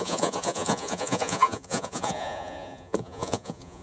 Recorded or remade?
remade